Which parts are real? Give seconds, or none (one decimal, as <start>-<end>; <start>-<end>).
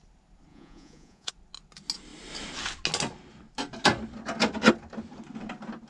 0.0-0.5; 1.3-5.9